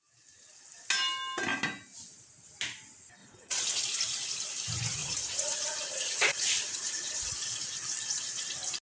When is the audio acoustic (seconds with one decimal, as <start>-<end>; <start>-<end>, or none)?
0.0-3.2; 3.8-5.0; 7.3-9.0